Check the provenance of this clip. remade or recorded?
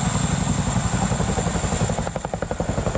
recorded